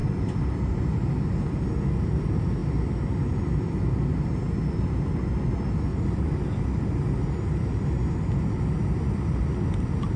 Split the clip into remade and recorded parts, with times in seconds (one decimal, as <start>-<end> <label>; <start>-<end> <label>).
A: 0.0-5.9 recorded; 5.9-7.2 remade; 7.2-10.2 recorded